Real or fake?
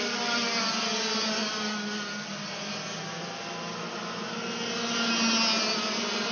real